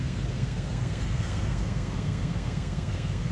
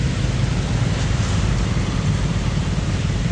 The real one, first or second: second